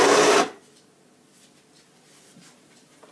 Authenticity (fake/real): real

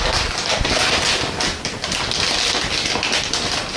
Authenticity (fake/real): real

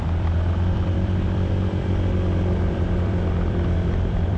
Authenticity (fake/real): fake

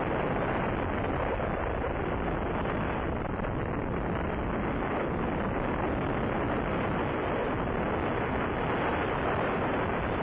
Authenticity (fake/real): real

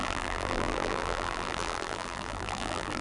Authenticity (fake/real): fake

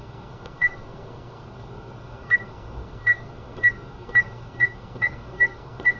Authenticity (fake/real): fake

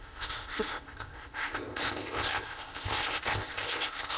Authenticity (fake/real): fake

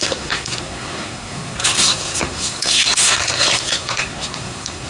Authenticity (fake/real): fake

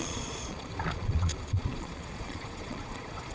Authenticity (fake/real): fake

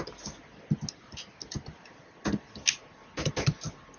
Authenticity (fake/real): real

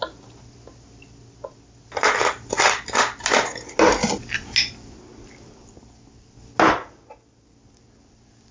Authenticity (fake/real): real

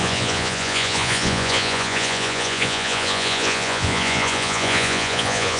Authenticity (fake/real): fake